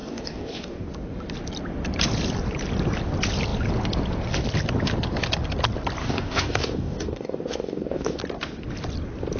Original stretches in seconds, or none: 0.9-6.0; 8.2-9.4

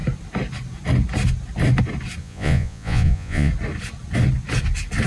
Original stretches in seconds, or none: 0.0-2.2; 3.5-5.1

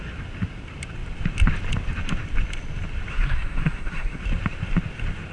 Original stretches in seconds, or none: 0.0-3.1; 4.2-5.3

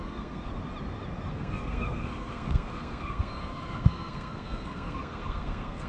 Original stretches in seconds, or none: 0.5-1.3

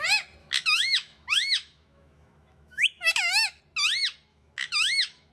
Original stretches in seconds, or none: 0.0-0.4; 3.6-4.3

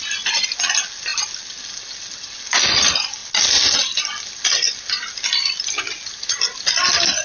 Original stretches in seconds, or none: 0.0-7.2